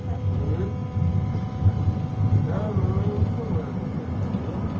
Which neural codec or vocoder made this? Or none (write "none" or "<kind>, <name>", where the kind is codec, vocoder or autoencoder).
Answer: none